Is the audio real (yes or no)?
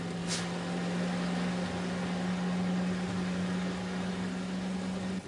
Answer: yes